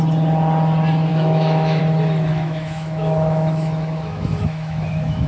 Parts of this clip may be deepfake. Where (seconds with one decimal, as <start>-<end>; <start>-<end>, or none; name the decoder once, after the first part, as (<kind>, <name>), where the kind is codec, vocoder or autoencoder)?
1.1-1.8 (autoencoder, DAC-VAE); 2.3-5.3

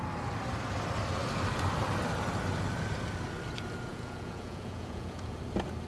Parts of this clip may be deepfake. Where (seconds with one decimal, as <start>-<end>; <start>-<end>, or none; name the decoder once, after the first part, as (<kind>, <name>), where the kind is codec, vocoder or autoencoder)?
3.9-5.4 (vocoder, Vocos)